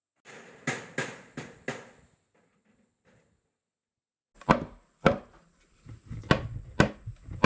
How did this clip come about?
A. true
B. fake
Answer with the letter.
A